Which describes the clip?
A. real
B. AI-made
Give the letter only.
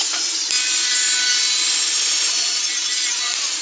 A